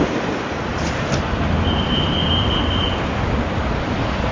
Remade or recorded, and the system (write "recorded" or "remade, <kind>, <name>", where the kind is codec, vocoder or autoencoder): remade, vocoder, BigVGAN v2